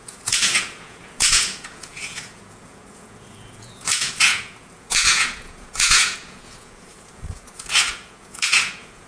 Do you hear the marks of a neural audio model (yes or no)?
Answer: yes